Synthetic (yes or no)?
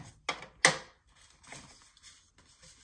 no